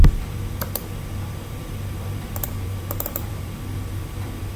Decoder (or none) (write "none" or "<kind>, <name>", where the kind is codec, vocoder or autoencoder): vocoder, BigVGAN v2